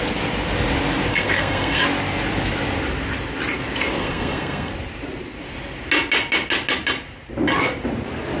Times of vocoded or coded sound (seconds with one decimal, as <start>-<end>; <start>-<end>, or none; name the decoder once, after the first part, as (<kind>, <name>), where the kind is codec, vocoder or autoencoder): 1.1-1.8 (codec, SNAC); 4.0-4.7